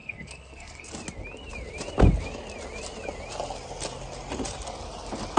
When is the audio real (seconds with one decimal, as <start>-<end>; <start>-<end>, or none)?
0.9-5.4